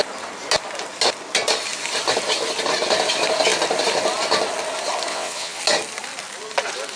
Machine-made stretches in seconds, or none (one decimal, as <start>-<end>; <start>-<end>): 5.1-5.6